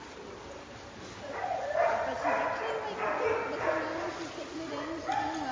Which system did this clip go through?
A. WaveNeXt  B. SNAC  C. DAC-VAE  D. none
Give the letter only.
D